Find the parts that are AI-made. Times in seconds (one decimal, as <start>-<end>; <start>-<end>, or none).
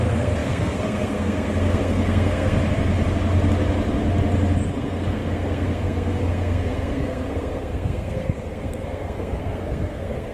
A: 0.0-2.6; 4.7-10.3